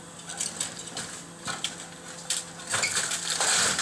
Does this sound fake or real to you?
real